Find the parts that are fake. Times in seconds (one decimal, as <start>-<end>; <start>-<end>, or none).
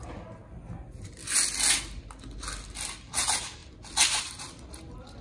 none